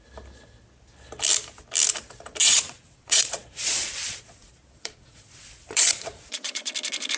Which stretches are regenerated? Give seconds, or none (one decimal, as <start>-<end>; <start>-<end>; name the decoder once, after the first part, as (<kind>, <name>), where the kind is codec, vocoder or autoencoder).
2.4-6.7 (vocoder, Vocos)